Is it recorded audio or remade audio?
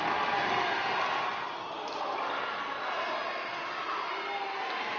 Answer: recorded